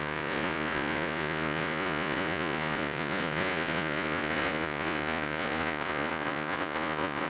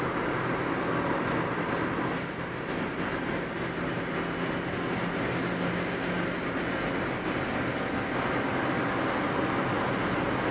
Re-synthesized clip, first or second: first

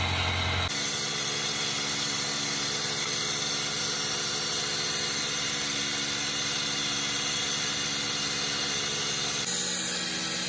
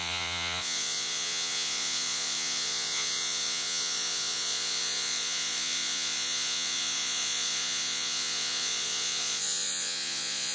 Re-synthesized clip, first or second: second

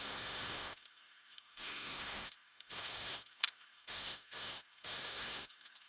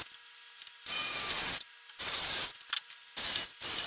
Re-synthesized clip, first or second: first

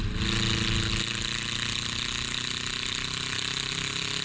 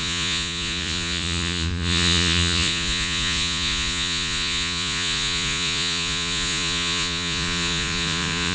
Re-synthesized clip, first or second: second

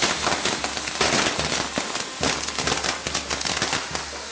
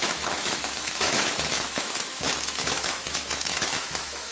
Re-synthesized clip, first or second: second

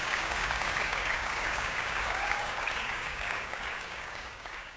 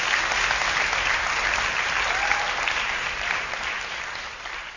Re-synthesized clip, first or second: first